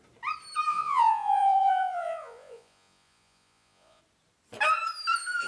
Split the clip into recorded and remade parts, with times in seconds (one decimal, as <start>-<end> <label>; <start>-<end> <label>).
0.0-0.7 recorded; 0.7-4.0 remade; 4.0-5.5 recorded